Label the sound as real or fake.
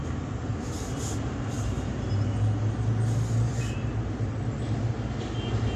real